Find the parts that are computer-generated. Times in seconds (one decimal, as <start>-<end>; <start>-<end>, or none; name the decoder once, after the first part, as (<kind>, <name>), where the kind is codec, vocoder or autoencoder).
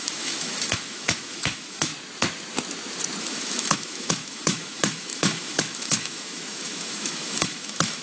0.0-1.9 (autoencoder, DAC-VAE); 3.2-8.0